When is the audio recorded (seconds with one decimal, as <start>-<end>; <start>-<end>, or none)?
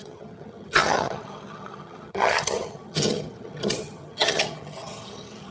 none